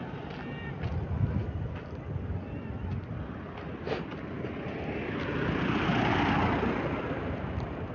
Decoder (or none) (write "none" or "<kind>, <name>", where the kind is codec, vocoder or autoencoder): none